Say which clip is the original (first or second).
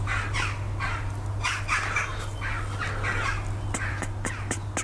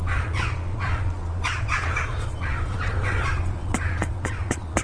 first